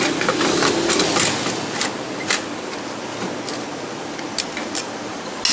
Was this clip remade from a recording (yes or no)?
no